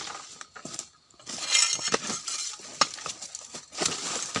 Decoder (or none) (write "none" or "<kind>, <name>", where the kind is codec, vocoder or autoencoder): none